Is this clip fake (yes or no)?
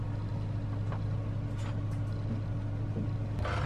no